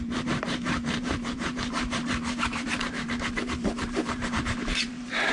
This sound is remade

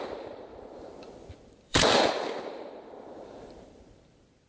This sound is remade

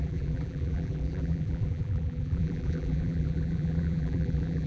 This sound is remade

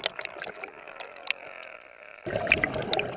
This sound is recorded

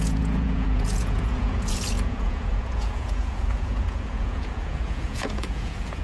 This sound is remade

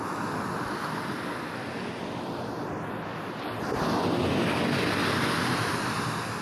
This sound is recorded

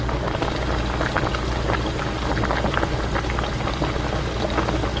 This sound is recorded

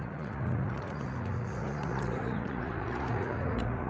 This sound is remade